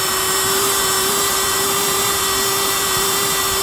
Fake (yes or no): yes